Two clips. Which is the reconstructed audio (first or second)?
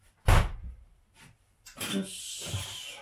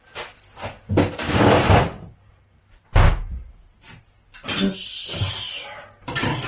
first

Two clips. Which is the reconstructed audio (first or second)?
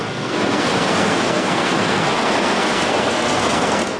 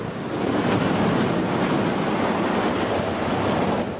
first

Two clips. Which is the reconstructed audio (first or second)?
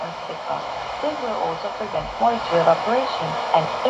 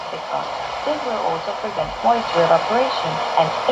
first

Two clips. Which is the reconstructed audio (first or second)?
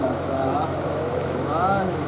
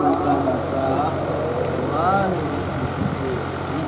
first